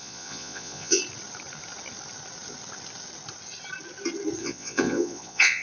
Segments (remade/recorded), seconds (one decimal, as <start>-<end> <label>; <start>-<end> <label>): 0.0-1.0 remade; 1.0-4.4 recorded; 4.4-5.6 remade